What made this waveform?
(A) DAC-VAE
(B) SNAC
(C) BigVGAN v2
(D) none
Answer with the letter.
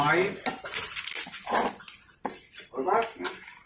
D